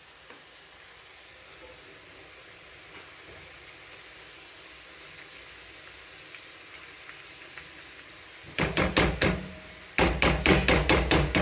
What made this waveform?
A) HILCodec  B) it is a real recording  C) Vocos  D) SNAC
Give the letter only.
B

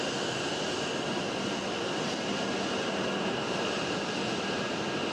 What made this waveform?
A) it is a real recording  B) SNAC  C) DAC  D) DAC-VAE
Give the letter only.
A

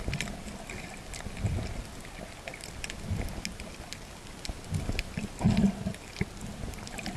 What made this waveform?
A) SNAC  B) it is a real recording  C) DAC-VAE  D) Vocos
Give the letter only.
B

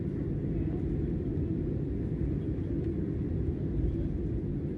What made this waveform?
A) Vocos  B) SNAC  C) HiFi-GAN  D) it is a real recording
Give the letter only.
D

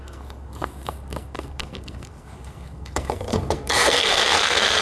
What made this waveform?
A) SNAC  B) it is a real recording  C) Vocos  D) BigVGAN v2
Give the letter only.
A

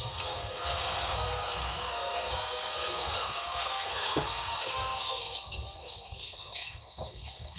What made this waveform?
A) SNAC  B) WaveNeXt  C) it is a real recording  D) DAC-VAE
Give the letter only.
A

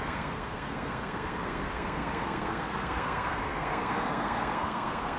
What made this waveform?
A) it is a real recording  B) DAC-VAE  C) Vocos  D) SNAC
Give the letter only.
D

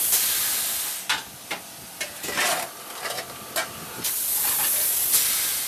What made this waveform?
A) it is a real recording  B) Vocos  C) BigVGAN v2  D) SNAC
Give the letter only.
A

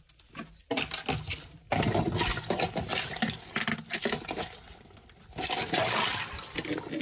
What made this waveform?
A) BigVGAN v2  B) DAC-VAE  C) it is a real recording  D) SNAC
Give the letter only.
C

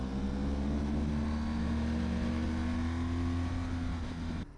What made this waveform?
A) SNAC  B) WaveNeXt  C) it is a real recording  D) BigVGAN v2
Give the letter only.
C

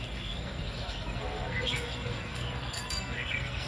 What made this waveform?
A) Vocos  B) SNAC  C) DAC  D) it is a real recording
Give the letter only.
B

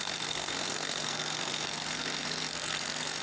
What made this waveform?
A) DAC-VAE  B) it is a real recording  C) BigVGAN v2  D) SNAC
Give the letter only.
D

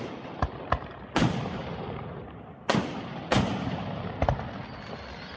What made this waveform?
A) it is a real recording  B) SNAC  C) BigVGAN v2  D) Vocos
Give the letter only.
A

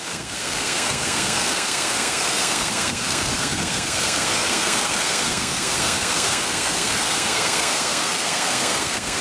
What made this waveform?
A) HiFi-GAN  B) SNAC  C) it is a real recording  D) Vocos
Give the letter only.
B